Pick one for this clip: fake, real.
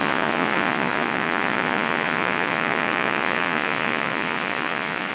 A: fake